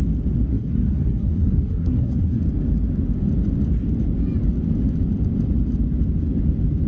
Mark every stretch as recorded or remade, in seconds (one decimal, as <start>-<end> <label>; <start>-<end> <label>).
0.0-0.5 recorded; 0.5-2.4 remade; 2.4-6.9 recorded